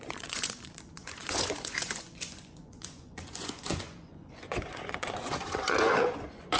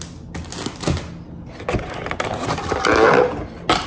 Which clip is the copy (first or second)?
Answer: first